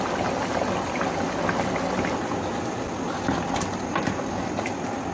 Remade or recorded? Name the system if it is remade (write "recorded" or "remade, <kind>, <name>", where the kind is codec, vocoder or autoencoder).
recorded